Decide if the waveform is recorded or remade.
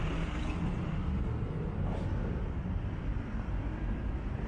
recorded